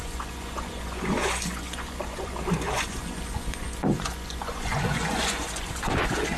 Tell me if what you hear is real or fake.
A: fake